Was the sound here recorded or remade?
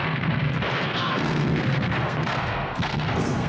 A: remade